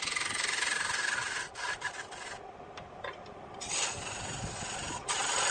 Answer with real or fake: real